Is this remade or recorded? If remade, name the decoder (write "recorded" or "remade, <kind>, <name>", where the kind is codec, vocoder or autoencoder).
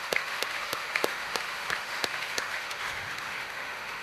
remade, autoencoder, DAC-VAE